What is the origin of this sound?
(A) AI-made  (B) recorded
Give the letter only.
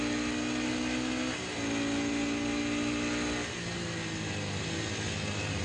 B